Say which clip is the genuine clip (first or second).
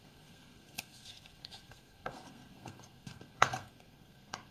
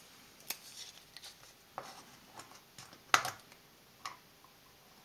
second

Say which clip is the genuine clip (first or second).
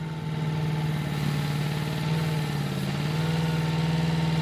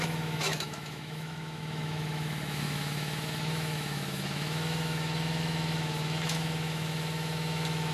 first